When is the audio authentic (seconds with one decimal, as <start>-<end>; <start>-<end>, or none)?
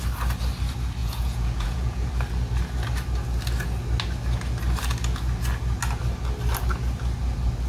0.0-1.0; 2.1-7.7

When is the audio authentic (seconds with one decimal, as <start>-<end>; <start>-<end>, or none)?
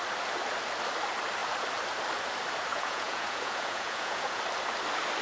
0.0-2.7; 4.4-5.2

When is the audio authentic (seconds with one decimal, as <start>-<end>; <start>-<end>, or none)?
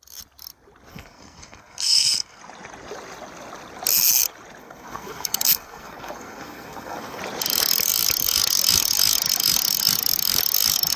0.0-0.9; 2.4-4.6; 7.2-11.0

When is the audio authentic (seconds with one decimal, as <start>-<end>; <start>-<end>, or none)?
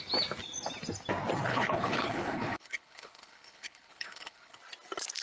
0.0-1.5; 4.6-5.2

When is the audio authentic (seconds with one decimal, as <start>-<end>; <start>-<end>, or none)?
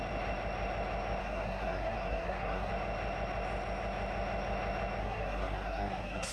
0.0-1.2; 2.7-5.0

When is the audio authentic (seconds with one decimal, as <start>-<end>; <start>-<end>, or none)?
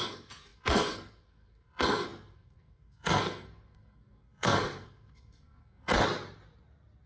5.9-7.1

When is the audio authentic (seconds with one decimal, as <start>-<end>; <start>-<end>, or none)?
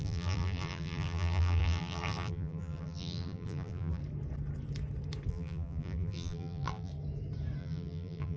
4.0-5.3; 6.9-7.6